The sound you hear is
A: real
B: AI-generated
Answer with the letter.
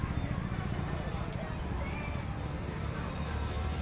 B